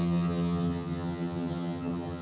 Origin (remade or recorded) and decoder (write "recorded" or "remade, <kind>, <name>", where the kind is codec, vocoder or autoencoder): remade, vocoder, HiFi-GAN